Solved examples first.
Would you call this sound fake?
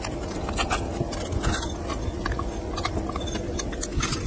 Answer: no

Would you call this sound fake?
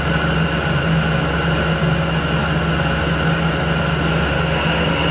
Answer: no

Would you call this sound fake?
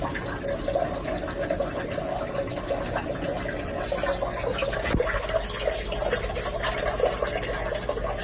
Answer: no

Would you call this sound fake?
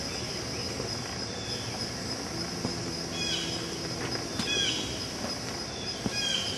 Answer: no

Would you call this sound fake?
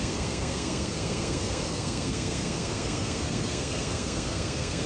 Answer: yes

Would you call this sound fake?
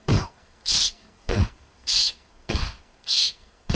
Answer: yes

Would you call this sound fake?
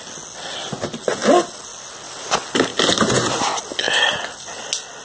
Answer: no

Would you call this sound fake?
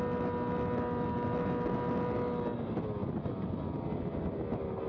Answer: no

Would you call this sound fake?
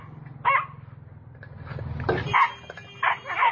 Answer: no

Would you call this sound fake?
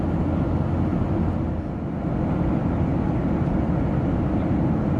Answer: no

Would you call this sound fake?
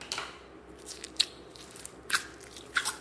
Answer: no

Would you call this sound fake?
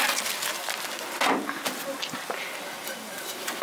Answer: no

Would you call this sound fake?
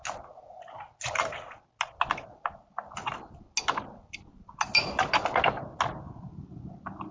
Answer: no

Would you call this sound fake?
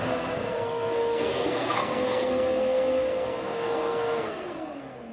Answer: yes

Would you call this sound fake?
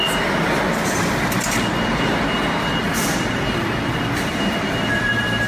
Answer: no